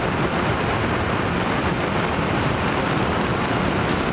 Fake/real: real